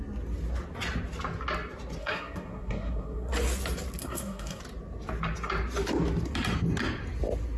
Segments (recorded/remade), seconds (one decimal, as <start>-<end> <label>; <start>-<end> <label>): 0.0-2.0 recorded; 2.0-3.3 remade; 3.3-4.0 recorded; 4.0-4.6 remade; 4.6-7.6 recorded